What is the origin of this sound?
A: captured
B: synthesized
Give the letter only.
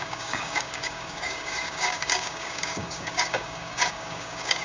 B